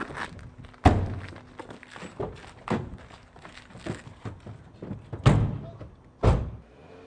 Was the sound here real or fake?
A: real